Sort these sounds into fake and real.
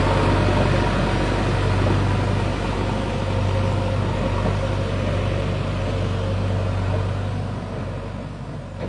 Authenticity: real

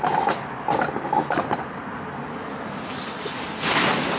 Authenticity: real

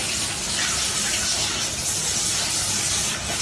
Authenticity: real